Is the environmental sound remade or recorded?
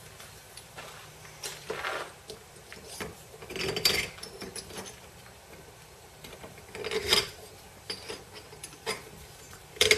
remade